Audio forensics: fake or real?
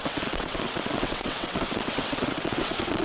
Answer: fake